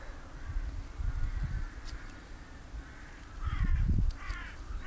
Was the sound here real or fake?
fake